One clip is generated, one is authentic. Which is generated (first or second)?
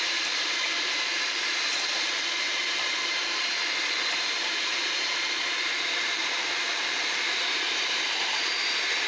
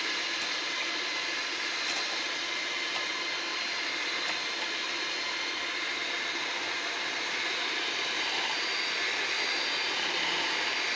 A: first